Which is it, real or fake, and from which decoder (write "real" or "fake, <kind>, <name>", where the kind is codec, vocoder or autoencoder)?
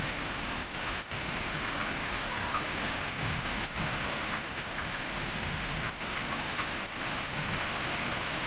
fake, autoencoder, DAC-VAE